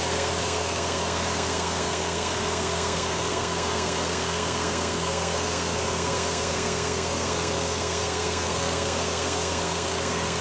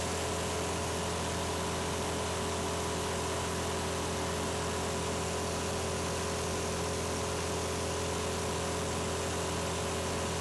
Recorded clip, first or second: second